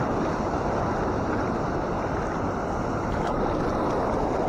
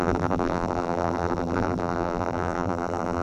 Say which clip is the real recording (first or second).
first